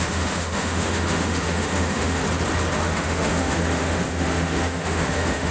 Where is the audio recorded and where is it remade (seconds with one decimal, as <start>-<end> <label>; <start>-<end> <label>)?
0.0-2.2 remade; 2.2-2.8 recorded; 2.8-5.5 remade